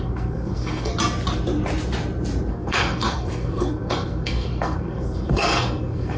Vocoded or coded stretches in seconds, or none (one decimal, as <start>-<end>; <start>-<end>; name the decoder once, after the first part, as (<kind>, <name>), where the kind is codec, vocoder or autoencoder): 0.0-0.9 (codec, SNAC); 2.5-6.2